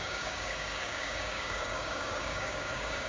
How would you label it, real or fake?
fake